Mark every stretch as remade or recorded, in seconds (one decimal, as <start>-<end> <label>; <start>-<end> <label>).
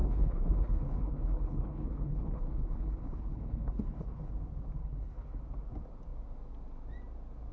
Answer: 0.0-4.3 remade; 4.3-4.8 recorded; 4.8-5.4 remade; 5.4-7.5 recorded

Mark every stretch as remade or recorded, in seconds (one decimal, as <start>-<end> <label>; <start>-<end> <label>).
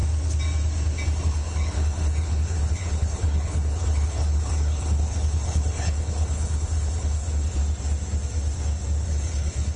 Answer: 0.0-1.2 recorded; 1.2-7.6 remade; 7.6-9.0 recorded; 9.0-9.8 remade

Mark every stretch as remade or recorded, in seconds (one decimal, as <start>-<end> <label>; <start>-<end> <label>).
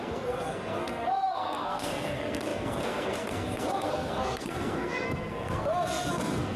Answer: 0.0-6.6 remade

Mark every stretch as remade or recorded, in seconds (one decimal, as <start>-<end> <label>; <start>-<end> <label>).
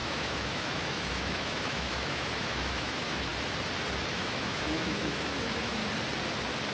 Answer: 0.0-3.3 remade; 3.3-4.1 recorded; 4.1-5.8 remade; 5.8-6.7 recorded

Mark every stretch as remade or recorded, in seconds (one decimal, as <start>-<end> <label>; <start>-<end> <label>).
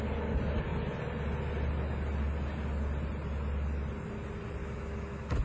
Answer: 0.0-4.6 recorded; 4.6-5.4 remade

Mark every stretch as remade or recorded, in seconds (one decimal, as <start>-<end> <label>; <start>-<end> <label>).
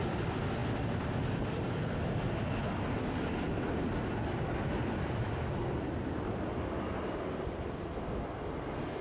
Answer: 0.0-9.0 recorded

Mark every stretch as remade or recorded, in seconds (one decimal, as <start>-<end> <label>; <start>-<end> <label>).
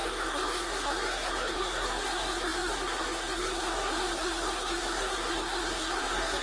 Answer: 0.0-6.4 remade